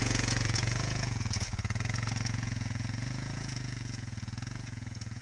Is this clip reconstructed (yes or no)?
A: yes